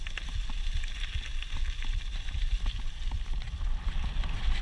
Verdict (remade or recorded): recorded